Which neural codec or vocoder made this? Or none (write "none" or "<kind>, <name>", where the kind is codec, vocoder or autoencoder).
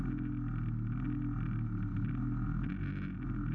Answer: none